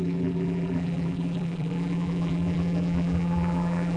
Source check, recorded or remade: remade